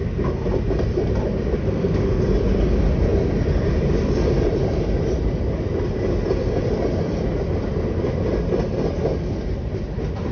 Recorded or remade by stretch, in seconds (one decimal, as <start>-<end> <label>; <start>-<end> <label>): 0.0-1.6 recorded; 1.6-2.2 remade; 2.2-10.3 recorded